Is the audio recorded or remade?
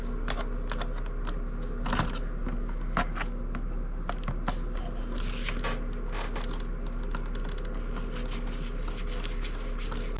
recorded